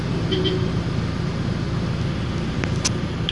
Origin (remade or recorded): recorded